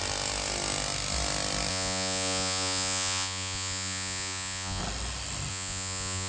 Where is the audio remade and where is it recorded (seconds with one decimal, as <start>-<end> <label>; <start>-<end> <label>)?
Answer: 0.0-1.7 recorded; 1.7-4.8 remade; 4.8-5.5 recorded; 5.5-6.3 remade